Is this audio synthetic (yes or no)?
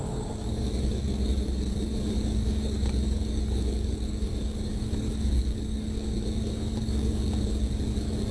yes